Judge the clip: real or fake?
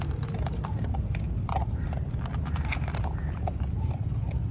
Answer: real